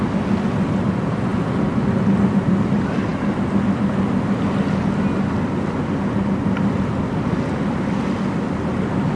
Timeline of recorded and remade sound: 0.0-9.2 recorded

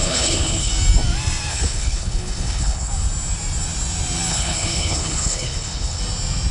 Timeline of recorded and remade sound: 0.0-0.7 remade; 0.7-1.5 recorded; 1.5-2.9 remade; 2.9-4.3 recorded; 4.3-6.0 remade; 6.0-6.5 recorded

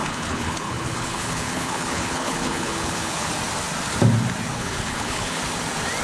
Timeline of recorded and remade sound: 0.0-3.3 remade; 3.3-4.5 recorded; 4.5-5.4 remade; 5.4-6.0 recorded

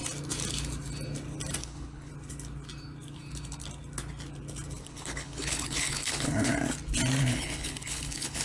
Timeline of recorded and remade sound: 0.0-1.6 recorded; 1.6-2.1 remade; 2.1-4.8 recorded; 4.8-6.5 remade; 6.5-7.2 recorded; 7.2-8.4 remade

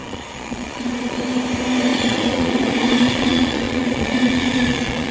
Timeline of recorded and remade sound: 0.0-1.2 remade; 1.2-1.9 recorded; 1.9-5.1 remade

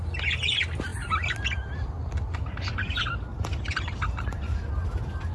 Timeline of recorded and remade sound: 0.0-3.3 recorded; 3.3-4.7 remade; 4.7-5.3 recorded

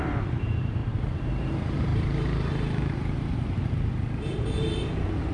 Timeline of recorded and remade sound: 0.0-0.8 remade; 0.8-1.4 recorded; 1.4-5.3 remade